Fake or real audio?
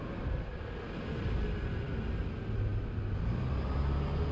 real